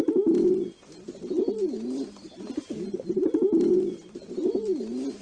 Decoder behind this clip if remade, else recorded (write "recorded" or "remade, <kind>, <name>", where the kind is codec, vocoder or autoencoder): recorded